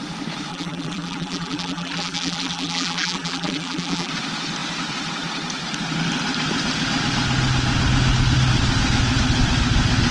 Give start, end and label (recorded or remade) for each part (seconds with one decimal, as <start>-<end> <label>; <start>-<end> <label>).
0.0-0.5 recorded; 0.5-4.1 remade; 4.1-10.1 recorded